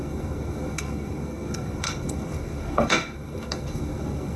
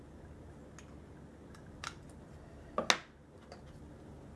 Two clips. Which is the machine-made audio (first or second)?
first